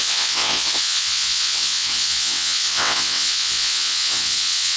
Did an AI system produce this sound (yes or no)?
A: yes